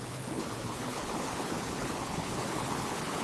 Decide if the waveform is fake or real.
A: fake